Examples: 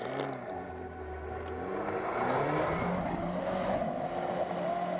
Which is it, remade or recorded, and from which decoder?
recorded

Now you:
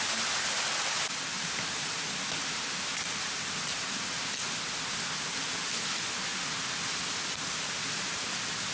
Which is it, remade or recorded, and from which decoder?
recorded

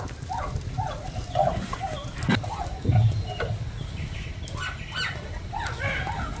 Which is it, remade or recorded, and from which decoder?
recorded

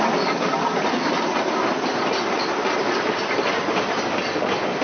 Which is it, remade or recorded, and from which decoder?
recorded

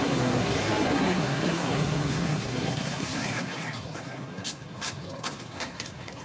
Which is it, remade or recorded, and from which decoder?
remade, codec, SNAC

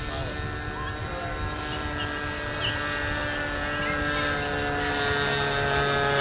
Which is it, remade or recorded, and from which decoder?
recorded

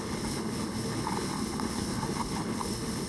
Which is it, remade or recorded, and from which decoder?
remade, codec, HILCodec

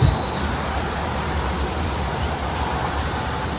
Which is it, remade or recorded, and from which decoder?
recorded